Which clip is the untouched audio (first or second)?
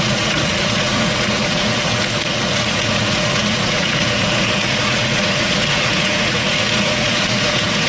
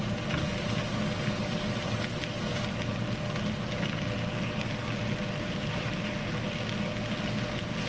second